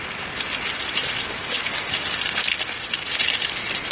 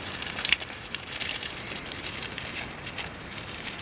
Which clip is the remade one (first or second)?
second